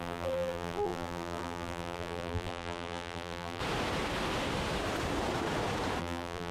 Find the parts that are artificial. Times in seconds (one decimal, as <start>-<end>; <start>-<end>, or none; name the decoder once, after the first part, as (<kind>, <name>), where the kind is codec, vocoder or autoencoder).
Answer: 0.0-3.6 (vocoder, BigVGAN v2); 6.0-6.5